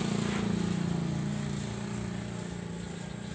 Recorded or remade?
recorded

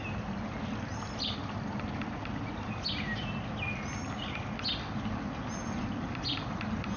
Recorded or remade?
recorded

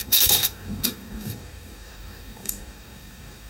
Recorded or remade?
remade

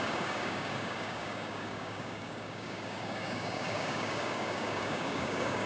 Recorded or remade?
remade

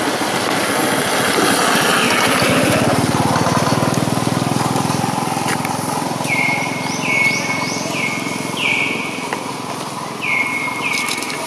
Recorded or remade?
recorded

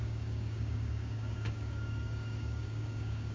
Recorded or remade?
remade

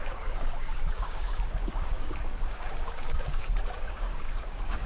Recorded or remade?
remade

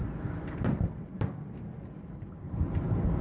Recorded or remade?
recorded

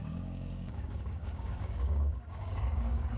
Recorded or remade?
remade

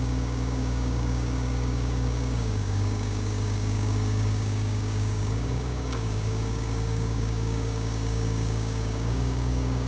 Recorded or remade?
remade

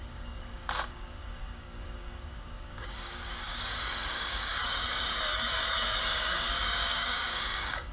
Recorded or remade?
remade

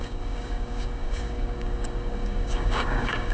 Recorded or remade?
remade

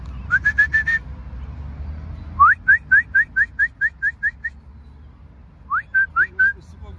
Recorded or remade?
recorded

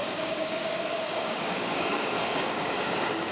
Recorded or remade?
remade